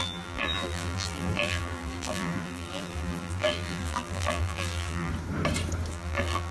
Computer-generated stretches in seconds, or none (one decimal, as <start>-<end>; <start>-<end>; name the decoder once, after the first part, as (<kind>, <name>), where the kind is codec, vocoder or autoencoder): 0.0-5.1 (vocoder, BigVGAN v2); 5.9-6.5